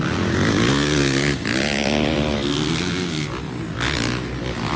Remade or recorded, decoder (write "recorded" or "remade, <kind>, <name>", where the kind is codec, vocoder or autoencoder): recorded